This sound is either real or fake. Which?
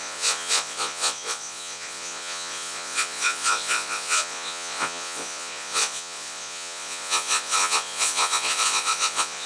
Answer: fake